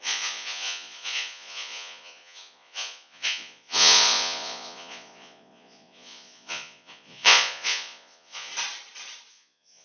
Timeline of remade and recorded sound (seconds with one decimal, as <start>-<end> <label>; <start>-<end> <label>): 0.0-8.5 remade; 8.5-9.3 recorded; 9.3-9.8 remade